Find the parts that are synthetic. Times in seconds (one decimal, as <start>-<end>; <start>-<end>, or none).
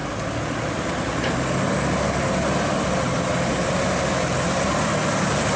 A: none